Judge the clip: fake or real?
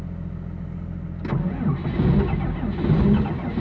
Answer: real